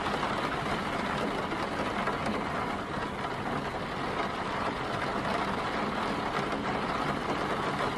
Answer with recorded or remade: recorded